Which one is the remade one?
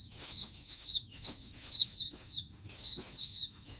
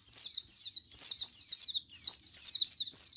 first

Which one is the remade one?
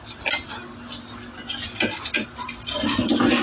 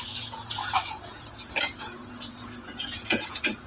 second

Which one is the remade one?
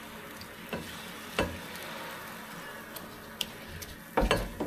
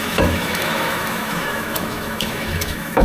second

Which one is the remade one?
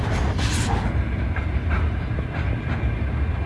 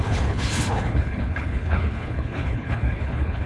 second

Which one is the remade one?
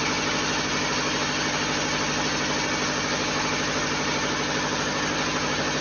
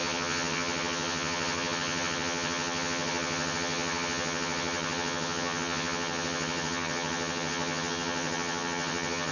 second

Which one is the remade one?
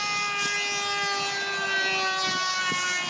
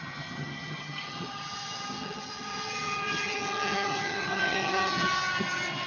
second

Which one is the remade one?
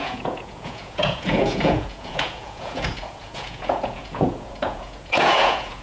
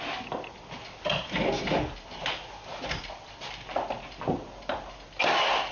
first